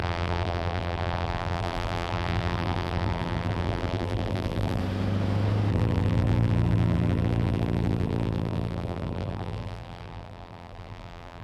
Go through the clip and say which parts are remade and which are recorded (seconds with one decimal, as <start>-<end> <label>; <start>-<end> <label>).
0.0-4.8 remade; 4.8-5.7 recorded; 5.7-11.4 remade